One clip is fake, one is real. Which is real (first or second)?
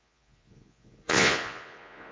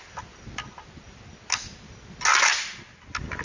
second